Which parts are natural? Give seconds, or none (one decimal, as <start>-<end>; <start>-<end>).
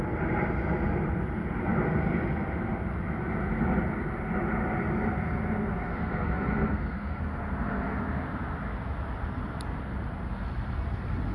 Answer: 0.0-5.9; 7.2-11.3